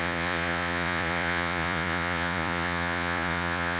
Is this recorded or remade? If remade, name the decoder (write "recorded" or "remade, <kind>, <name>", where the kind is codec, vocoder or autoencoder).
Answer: remade, vocoder, Vocos